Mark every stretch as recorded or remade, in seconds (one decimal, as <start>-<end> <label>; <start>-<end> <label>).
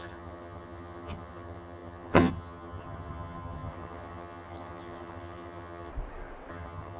0.0-5.9 remade; 5.9-6.5 recorded; 6.5-7.0 remade